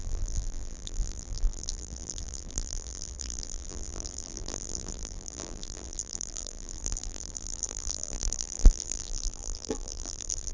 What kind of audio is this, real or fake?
fake